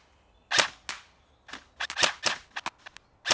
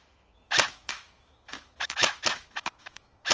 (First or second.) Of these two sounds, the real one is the first